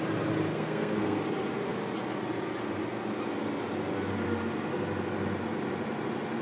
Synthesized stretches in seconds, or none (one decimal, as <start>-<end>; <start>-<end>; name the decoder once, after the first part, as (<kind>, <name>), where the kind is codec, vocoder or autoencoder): 0.5-1.2 (codec, SNAC)

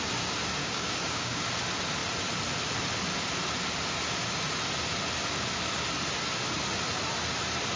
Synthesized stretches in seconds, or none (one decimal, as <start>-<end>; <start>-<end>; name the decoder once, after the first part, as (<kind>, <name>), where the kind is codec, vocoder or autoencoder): 0.6-1.4 (codec, DAC)

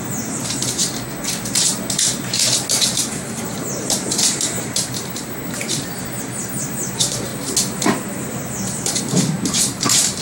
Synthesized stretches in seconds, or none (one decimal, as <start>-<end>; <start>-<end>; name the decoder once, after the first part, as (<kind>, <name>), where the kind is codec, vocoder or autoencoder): 0.0-0.8 (vocoder, BigVGAN v2); 2.8-7.3; 9.0-10.2

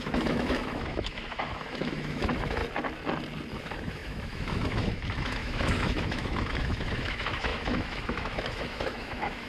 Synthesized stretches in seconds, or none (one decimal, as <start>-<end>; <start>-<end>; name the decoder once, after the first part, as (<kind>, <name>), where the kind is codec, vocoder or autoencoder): 0.0-2.6 (autoencoder, DAC-VAE); 3.6-9.5